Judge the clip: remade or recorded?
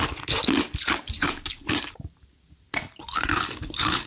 recorded